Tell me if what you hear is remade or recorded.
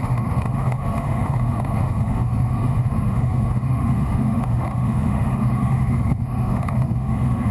remade